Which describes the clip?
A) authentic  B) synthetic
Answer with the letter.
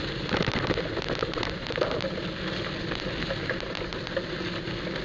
A